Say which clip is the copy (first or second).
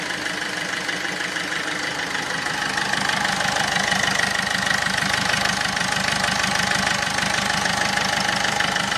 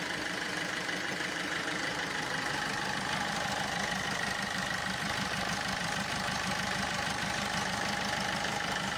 second